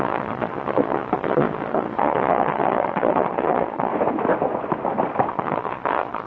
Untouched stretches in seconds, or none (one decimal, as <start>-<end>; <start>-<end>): 3.9-5.3